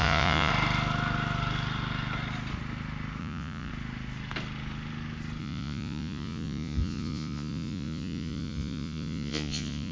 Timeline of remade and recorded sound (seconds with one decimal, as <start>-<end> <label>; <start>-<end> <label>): 0.0-0.5 remade; 0.5-3.2 recorded; 3.2-3.7 remade; 3.7-5.4 recorded; 5.4-9.9 remade